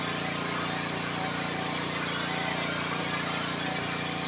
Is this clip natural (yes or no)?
yes